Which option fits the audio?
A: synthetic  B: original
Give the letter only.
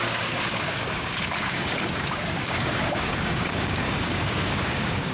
A